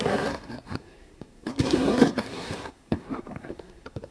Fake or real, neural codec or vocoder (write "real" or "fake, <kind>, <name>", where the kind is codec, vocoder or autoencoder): fake, codec, SNAC